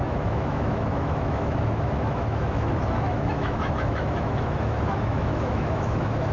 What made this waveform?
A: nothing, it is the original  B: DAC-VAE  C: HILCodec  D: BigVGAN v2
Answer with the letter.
B